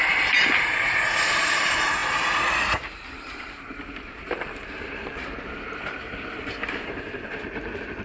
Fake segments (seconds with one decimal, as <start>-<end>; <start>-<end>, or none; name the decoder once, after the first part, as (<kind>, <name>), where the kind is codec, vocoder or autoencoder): 0.0-8.0 (vocoder, BigVGAN v2)